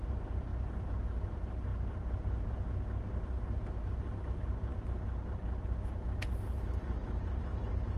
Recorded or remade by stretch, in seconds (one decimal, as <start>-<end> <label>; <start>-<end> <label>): 0.0-0.5 remade; 0.5-1.1 recorded; 1.1-1.7 remade; 1.7-3.2 recorded; 3.2-4.7 remade; 4.7-6.4 recorded; 6.4-8.0 remade